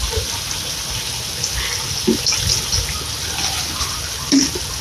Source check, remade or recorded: recorded